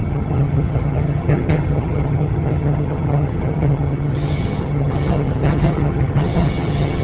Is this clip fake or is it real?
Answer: fake